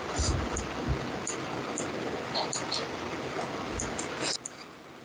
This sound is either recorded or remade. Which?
recorded